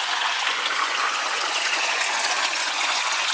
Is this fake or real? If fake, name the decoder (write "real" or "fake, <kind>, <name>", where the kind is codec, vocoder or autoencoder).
fake, vocoder, Vocos